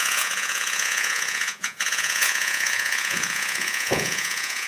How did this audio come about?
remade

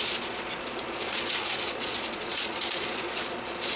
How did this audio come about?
remade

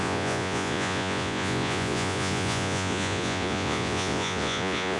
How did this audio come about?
remade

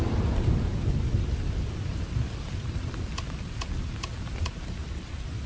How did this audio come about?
recorded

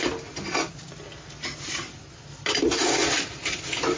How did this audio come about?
recorded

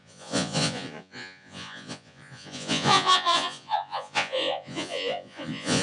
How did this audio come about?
remade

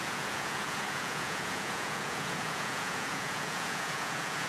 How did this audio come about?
remade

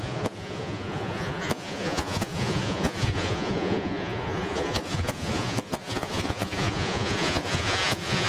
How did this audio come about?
remade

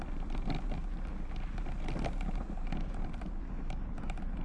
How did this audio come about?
recorded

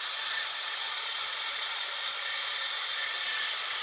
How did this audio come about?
remade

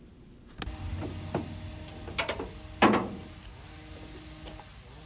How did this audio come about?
recorded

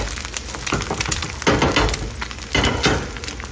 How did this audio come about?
recorded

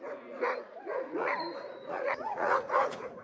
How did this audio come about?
remade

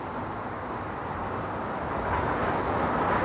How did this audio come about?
recorded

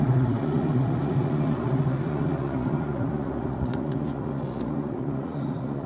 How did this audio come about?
remade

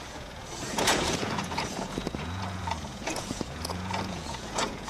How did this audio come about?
remade